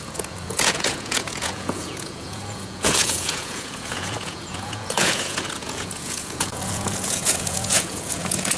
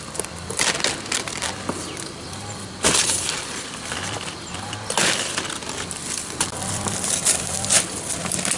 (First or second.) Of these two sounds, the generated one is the first